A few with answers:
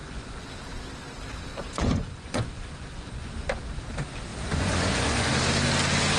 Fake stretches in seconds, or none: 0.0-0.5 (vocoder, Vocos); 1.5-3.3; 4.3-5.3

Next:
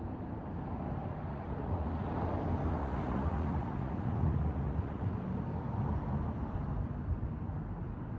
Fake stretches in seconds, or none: 1.3-2.2 (vocoder, Vocos); 2.6-5.1

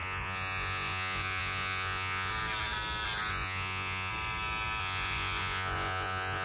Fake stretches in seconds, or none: 0.0-2.3 (vocoder, Vocos); 3.3-4.1; 4.8-6.4

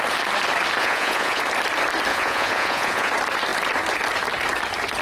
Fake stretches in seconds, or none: 0.8-1.4 (vocoder, Vocos); 2.1-3.1